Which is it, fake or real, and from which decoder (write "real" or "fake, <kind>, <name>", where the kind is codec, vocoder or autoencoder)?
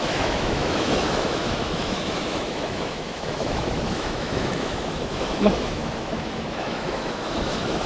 fake, autoencoder, DAC-VAE